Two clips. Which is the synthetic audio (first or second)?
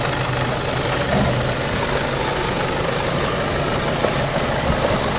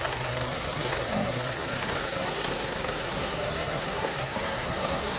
second